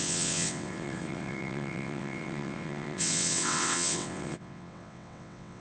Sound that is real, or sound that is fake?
fake